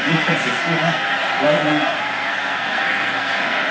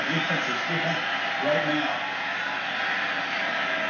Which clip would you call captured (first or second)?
second